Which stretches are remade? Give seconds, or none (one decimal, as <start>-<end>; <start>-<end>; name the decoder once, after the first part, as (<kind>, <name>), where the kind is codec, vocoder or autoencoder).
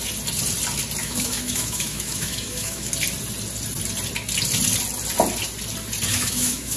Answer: 1.0-2.9 (autoencoder, DAC-VAE); 6.1-6.8